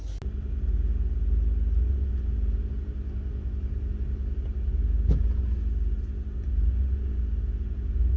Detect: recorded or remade recorded